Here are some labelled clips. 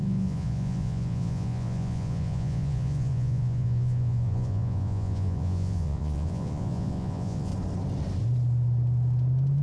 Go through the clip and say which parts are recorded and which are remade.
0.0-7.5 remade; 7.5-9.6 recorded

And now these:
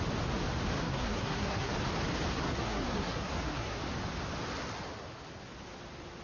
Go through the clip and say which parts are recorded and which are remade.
0.0-0.8 recorded; 0.8-1.7 remade; 1.7-2.3 recorded; 2.3-3.8 remade; 3.8-6.2 recorded

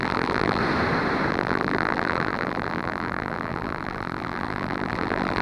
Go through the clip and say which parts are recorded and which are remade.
0.0-0.6 remade; 0.6-1.3 recorded; 1.3-5.4 remade

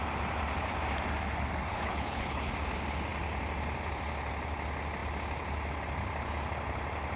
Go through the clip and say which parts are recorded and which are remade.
0.0-1.7 recorded; 1.7-2.5 remade; 2.5-7.2 recorded

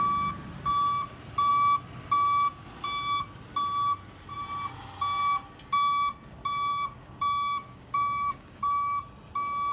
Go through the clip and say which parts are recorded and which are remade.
0.0-6.7 recorded; 6.7-8.6 remade; 8.6-9.7 recorded